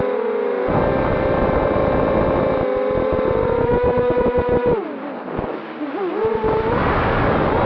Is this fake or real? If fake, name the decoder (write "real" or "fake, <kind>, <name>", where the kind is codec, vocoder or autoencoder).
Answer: real